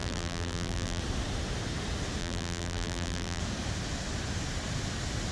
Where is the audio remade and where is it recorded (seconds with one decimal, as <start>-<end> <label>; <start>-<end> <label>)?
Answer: 0.0-1.0 remade; 1.0-2.2 recorded; 2.2-3.4 remade; 3.4-5.3 recorded

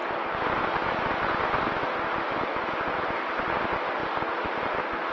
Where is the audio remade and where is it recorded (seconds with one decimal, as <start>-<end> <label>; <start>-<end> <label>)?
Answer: 0.0-5.1 recorded

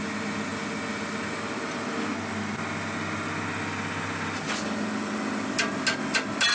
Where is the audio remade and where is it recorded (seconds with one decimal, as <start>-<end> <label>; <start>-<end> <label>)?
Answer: 0.0-6.5 recorded

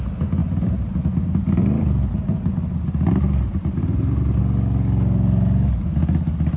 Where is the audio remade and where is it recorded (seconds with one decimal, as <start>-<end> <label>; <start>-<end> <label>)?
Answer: 0.0-0.4 recorded; 0.4-4.4 remade; 4.4-6.6 recorded

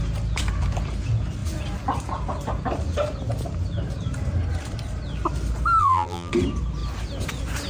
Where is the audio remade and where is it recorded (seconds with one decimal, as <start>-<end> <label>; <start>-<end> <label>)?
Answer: 0.0-5.8 recorded; 5.8-6.3 remade; 6.3-7.7 recorded

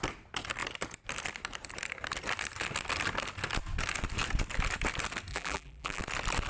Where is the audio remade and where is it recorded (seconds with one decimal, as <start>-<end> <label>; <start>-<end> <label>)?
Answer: 0.0-5.3 recorded; 5.3-6.0 remade; 6.0-6.5 recorded